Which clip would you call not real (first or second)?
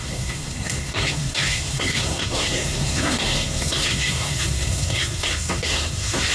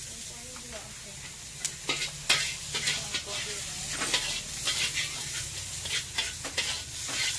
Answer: first